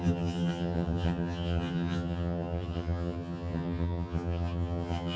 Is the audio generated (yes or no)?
yes